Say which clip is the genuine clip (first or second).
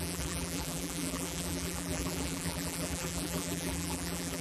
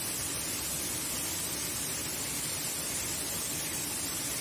second